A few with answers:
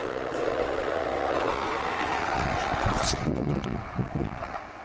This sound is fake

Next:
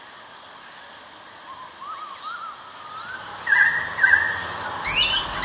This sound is real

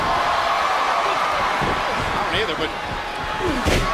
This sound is real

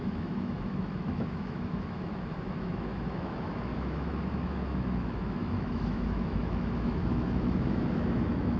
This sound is fake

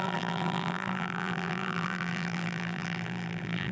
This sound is fake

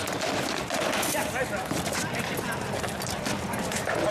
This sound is real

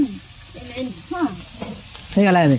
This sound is real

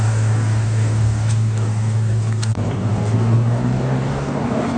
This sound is fake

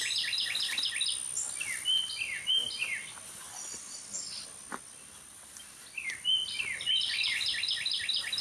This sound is real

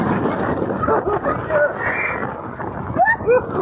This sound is real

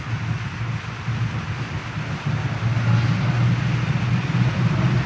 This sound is real